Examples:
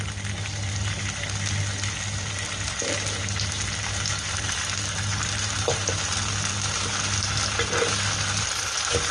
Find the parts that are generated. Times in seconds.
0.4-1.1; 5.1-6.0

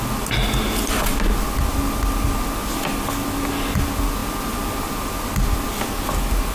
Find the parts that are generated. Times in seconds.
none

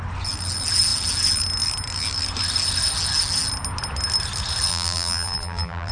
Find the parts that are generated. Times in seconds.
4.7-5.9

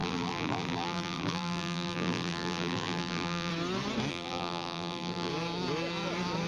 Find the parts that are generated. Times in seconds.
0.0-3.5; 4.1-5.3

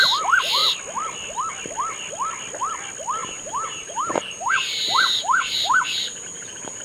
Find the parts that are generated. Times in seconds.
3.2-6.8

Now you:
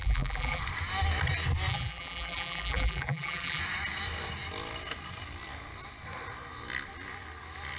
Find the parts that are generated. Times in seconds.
0.0-0.6; 1.7-3.6

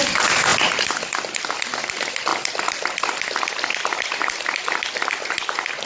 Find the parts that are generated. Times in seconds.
0.0-5.9

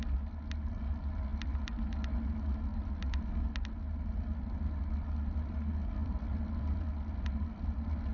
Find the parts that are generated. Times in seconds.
6.0-6.8